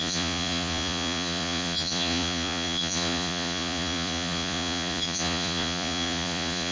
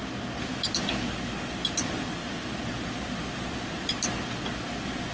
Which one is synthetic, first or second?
first